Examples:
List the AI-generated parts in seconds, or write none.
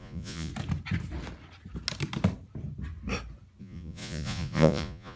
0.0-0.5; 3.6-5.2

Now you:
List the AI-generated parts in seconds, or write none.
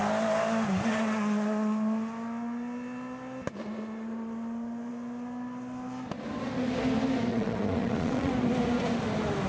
7.3-8.3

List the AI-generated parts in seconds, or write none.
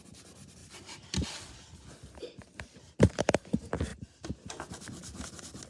none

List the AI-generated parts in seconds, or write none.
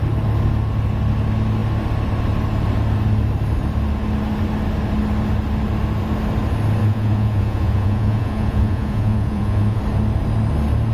6.8-9.8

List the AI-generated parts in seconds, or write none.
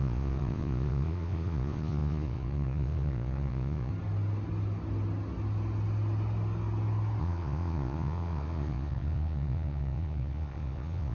0.0-3.9; 7.2-11.1